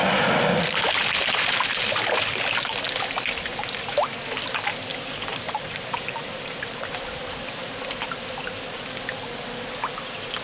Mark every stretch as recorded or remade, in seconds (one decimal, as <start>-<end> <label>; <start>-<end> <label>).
0.0-5.3 recorded; 5.3-6.9 remade; 6.9-10.4 recorded